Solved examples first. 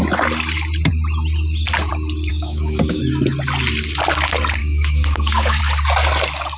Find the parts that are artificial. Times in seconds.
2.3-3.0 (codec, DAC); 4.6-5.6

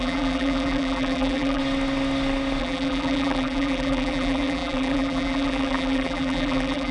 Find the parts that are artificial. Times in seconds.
0.0-1.6 (vocoder, BigVGAN v2); 2.6-6.9

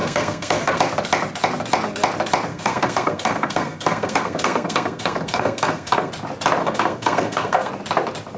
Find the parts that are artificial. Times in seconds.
0.0-0.8 (codec, SNAC); 2.5-6.1; 6.6-7.7

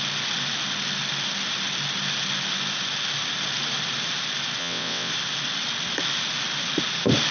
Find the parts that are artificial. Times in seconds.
4.6-5.1 (vocoder, WaveNeXt)

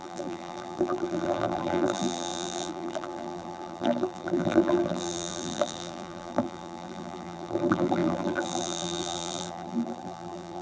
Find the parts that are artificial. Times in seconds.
0.0-10.6 (vocoder, BigVGAN v2)